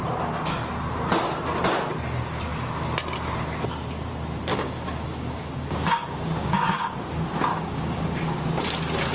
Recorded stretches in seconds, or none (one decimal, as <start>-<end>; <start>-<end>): 0.0-4.5; 6.9-7.5; 8.4-9.1